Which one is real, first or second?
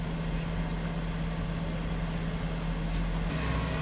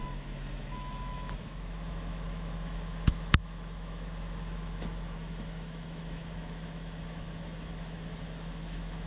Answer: first